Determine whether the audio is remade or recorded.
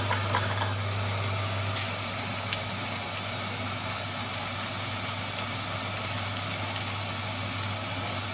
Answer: recorded